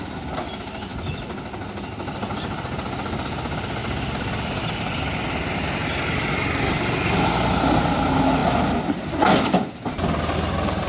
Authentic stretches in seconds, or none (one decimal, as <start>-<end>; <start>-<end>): 0.0-3.8; 5.0-10.9